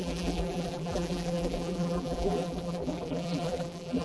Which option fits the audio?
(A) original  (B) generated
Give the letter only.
B